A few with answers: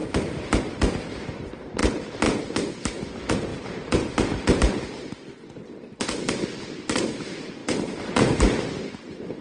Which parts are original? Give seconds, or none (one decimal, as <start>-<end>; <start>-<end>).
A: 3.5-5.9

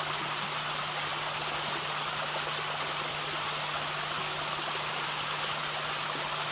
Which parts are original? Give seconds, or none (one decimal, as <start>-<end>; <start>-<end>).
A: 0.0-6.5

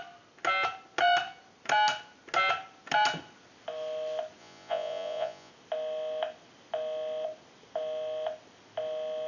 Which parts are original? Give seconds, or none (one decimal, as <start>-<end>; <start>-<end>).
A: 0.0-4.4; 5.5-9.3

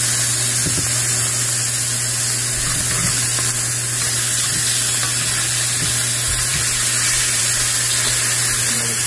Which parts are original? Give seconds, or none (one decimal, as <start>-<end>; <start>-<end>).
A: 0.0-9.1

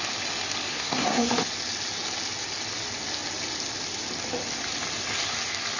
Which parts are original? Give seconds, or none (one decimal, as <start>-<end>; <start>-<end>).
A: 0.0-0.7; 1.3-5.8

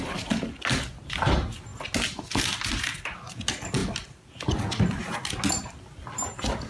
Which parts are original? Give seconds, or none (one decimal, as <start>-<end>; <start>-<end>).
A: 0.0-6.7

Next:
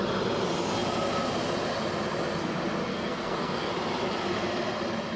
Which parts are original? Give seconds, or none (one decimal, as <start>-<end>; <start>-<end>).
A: 0.0-2.9; 3.7-5.2